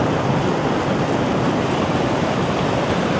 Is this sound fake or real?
real